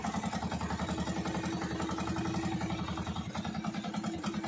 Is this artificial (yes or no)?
no